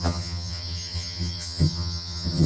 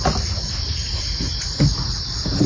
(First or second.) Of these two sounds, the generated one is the first